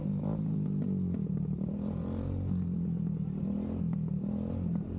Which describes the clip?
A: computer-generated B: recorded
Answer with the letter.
B